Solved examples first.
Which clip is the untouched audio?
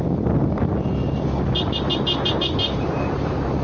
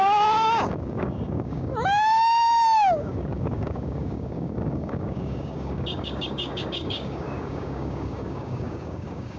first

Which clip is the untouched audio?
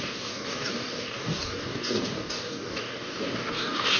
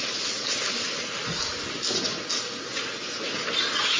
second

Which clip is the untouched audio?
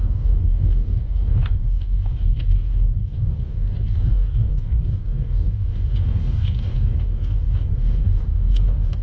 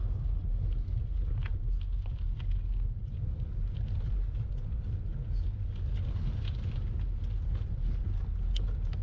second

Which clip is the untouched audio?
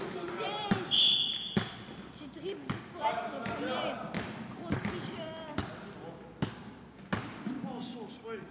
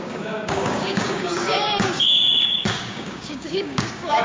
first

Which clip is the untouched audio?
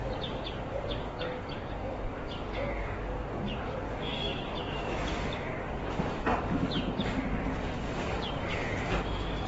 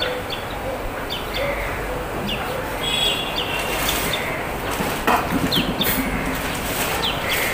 second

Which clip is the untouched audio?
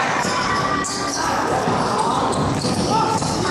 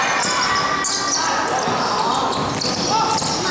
second